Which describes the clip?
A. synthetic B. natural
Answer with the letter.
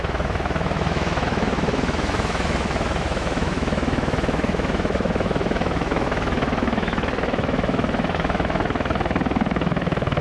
A